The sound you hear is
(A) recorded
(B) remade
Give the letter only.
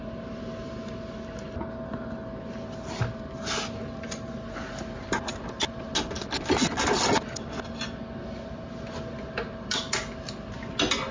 A